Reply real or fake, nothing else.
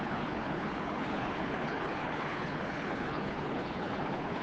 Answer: fake